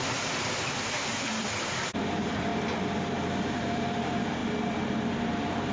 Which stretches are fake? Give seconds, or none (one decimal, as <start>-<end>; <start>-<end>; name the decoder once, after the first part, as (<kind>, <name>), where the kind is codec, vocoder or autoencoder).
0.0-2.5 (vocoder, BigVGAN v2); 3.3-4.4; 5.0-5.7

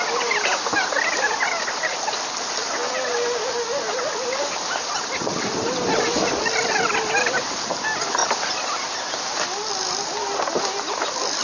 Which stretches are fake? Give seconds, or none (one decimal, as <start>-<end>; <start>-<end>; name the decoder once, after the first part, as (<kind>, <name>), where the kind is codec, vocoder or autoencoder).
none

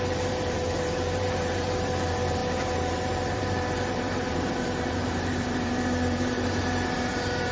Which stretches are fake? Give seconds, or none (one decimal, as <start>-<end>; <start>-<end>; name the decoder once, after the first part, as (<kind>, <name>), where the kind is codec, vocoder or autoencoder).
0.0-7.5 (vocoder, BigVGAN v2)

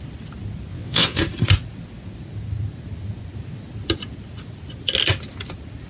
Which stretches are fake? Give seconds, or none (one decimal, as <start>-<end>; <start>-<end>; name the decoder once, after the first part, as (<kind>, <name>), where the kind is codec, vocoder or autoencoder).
0.7-1.2 (vocoder, WaveNeXt)

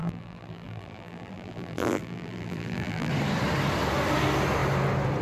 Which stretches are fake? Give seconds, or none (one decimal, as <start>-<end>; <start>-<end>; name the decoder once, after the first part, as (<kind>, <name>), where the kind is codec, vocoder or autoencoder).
0.0-3.1 (vocoder, BigVGAN v2)

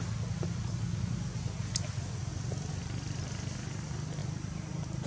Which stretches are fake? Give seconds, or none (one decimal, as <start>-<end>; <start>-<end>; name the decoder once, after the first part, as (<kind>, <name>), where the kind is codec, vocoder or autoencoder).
none

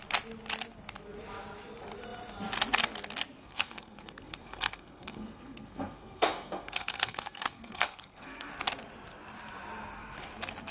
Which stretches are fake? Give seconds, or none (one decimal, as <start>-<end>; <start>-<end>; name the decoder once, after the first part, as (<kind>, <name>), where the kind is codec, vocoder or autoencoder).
3.4-8.5 (codec, SNAC)